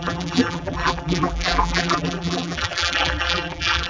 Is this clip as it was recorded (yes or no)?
no